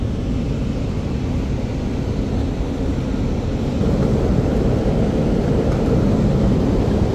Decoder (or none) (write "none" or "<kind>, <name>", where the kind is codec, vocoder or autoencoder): none